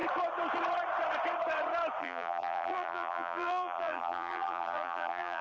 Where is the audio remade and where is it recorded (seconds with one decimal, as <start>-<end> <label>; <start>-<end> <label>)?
0.0-2.0 recorded; 2.0-5.4 remade